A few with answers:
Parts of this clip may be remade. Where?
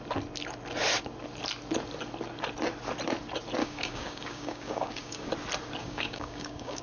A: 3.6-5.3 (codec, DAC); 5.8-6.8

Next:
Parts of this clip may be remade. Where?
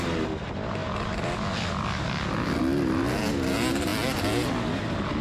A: none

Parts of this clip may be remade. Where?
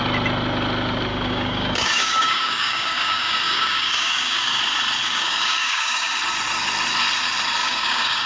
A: 1.1-4.6 (codec, DAC); 5.0-6.1; 7.6-8.3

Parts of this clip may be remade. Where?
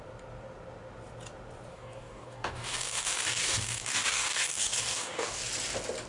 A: 1.7-5.4 (codec, DAC)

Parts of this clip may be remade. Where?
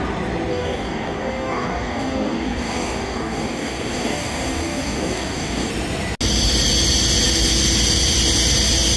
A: 0.5-5.7 (codec, DAC)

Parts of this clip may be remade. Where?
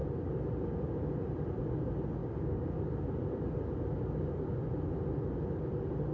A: 2.2-2.8 (codec, DAC)